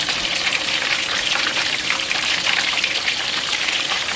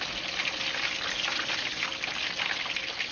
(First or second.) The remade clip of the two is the first